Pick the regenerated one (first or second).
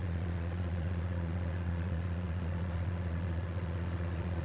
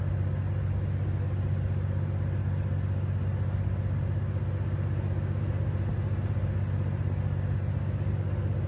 first